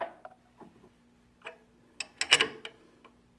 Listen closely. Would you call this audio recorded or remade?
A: recorded